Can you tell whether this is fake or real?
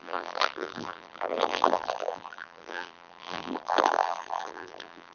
fake